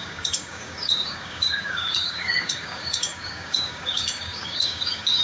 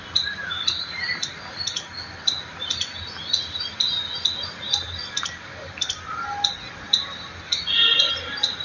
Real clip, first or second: second